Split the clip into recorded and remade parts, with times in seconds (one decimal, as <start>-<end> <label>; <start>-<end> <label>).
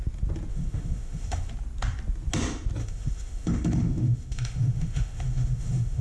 0.0-0.5 recorded; 0.5-1.5 remade; 1.5-2.8 recorded; 2.8-6.0 remade